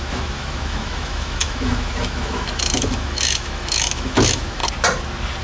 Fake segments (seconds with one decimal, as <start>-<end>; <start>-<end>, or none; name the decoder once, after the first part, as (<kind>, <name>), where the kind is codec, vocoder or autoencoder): 0.0-4.6 (autoencoder, DAC-VAE)